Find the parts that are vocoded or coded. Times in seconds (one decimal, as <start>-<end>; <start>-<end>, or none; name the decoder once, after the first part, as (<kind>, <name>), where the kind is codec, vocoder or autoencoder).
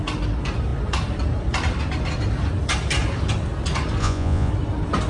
4.0-4.5 (vocoder, Vocos)